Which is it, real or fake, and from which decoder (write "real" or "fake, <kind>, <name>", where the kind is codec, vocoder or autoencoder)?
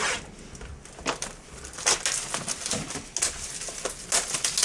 real